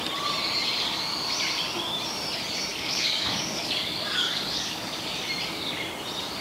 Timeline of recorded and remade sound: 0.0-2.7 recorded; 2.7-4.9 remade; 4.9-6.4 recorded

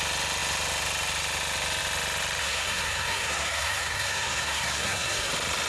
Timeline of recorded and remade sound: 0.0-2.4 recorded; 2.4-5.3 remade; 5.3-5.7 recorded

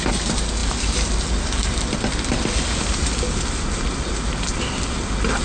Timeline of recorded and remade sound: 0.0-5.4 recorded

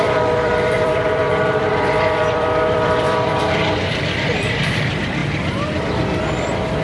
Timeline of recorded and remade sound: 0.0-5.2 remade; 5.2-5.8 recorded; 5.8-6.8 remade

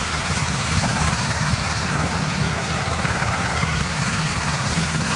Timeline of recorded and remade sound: 0.0-5.2 remade